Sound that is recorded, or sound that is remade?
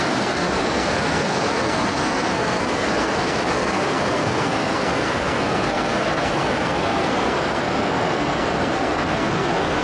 remade